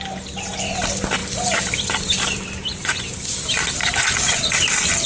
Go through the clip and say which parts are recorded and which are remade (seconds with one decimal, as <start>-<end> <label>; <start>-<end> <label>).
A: 0.0-5.1 recorded